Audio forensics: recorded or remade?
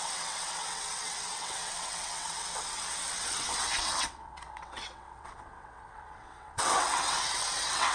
remade